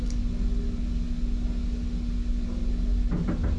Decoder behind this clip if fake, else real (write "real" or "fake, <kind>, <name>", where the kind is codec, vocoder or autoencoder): real